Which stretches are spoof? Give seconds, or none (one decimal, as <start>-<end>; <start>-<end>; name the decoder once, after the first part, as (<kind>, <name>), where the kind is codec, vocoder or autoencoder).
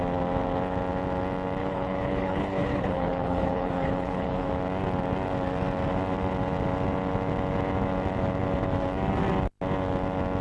1.6-4.5 (codec, HILCodec)